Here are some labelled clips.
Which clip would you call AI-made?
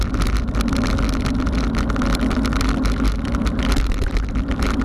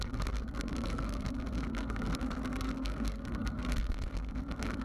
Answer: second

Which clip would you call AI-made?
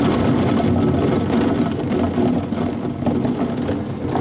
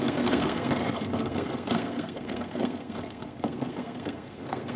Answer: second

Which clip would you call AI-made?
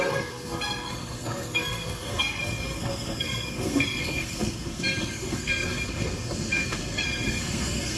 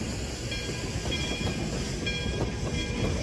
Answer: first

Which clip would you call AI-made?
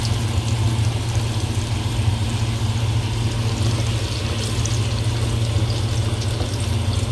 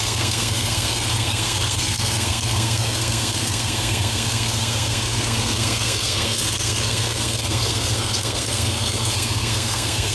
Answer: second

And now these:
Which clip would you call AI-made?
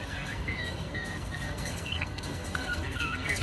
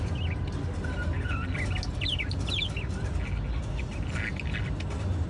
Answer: first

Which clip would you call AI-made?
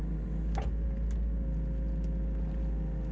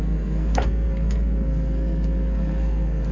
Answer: second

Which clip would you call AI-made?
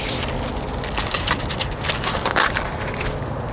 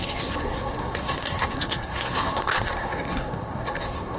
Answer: second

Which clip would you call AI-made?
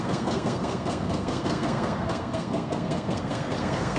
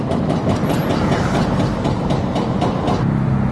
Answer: first